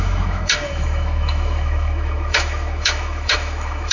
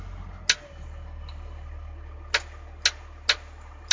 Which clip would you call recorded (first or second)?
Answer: second